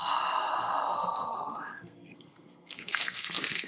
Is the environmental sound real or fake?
fake